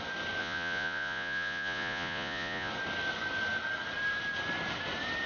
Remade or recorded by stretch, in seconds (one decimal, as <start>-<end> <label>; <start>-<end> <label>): 0.0-0.4 recorded; 0.4-2.7 remade; 2.7-5.3 recorded